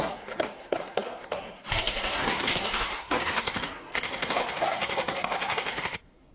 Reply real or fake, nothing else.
fake